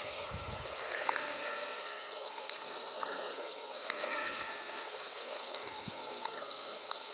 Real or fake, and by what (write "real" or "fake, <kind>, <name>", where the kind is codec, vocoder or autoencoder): fake, codec, SNAC